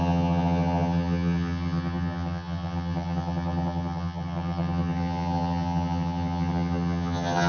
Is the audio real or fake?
fake